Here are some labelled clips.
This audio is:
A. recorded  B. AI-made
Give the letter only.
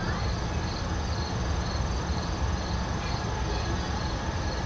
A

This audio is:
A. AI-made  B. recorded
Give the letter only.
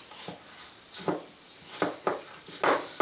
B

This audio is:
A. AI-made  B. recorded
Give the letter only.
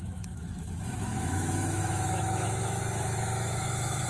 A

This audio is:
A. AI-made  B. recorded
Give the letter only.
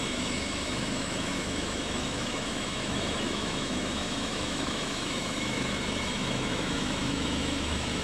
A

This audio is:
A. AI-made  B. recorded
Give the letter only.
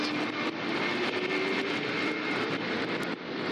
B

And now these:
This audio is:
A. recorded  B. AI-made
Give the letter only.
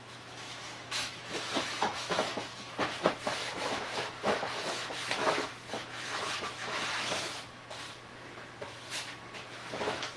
B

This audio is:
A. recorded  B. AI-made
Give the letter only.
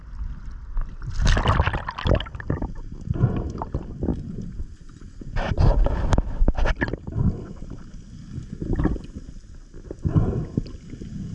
A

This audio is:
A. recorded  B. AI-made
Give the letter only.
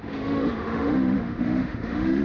B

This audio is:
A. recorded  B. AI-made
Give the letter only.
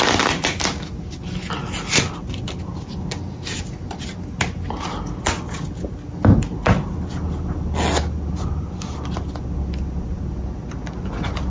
A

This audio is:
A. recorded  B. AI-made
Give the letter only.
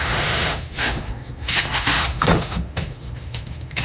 B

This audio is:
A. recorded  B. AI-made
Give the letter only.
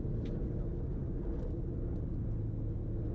A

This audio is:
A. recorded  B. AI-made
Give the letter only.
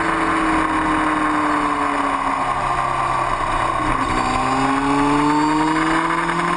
A